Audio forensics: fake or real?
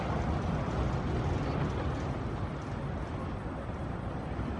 real